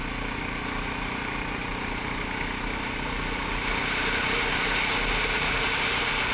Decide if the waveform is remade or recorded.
recorded